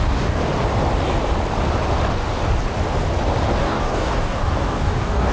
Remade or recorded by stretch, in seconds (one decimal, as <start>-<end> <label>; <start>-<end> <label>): 0.0-0.4 remade; 0.4-3.6 recorded; 3.6-5.3 remade

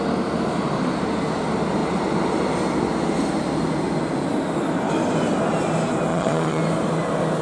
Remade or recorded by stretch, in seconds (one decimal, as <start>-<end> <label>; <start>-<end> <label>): 0.0-6.1 recorded; 6.1-6.6 remade; 6.6-7.4 recorded

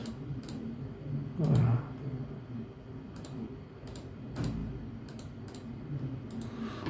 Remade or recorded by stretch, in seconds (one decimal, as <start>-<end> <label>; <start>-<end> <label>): 0.0-6.9 recorded

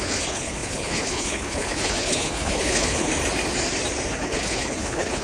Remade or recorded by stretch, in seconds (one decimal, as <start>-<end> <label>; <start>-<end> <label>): 0.0-3.1 remade; 3.1-4.1 recorded; 4.1-5.2 remade